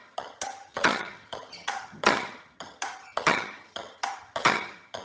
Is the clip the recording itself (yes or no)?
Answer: no